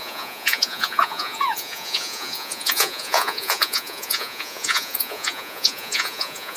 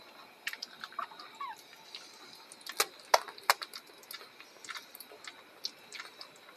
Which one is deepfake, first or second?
first